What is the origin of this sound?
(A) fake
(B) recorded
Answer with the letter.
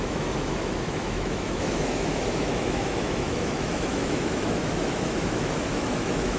A